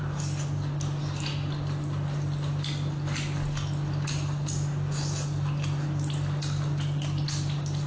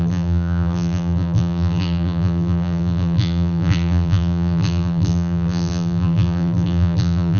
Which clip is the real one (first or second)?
first